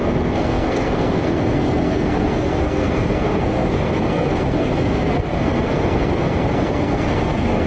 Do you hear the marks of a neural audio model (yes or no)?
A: yes